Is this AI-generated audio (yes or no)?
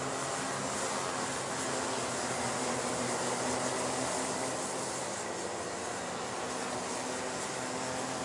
no